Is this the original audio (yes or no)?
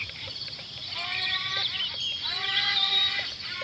yes